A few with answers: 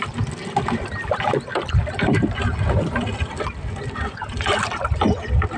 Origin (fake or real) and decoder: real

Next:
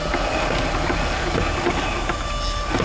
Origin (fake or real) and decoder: real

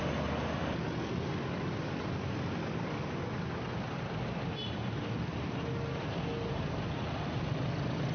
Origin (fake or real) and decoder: real